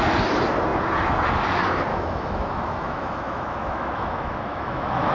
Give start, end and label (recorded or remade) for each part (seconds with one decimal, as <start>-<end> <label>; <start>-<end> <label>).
0.0-1.9 recorded; 1.9-5.1 remade